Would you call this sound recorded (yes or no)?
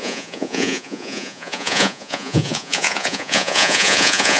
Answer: no